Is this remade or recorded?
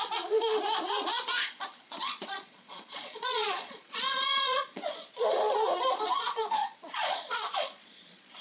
remade